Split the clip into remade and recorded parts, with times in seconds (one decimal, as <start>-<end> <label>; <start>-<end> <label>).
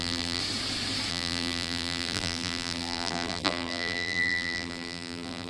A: 0.0-0.4 remade; 0.4-1.1 recorded; 1.1-5.5 remade